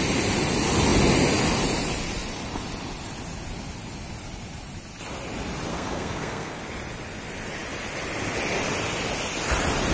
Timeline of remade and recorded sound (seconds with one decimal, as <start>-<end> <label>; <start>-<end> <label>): 0.0-5.7 recorded; 5.7-6.6 remade; 6.6-9.9 recorded